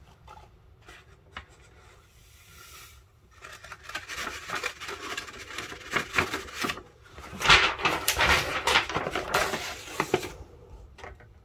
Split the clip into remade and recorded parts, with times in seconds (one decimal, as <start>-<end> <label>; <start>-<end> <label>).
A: 0.0-11.4 recorded